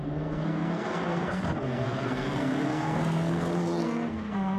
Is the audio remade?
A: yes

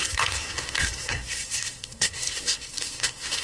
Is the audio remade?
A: yes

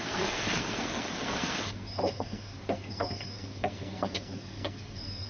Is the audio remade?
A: yes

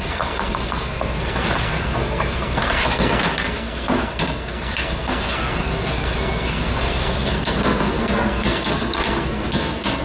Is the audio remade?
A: yes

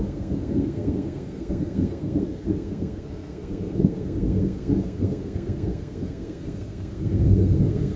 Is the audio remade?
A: yes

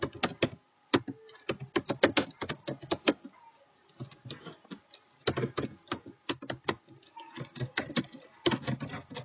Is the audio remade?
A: no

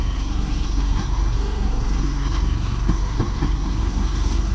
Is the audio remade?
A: yes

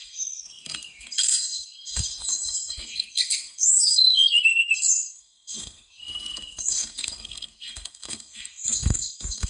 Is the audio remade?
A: yes